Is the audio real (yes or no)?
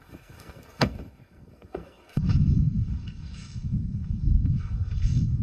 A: no